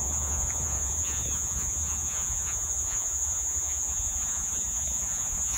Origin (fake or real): fake